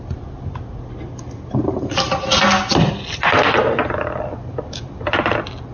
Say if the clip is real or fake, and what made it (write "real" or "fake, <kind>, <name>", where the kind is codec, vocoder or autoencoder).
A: real